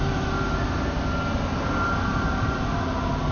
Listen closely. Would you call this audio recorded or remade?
recorded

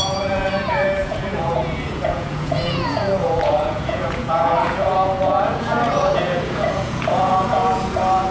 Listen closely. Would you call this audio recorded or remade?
remade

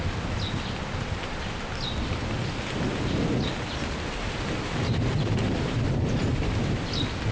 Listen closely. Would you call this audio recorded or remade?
recorded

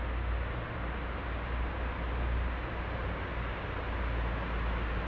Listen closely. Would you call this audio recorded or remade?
recorded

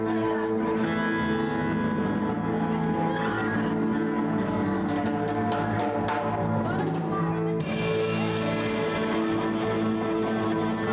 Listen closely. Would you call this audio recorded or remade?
recorded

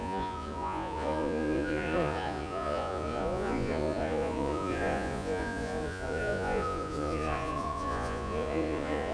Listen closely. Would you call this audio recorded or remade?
remade